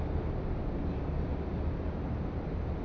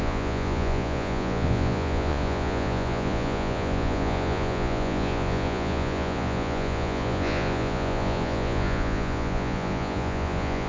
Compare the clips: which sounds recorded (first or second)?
first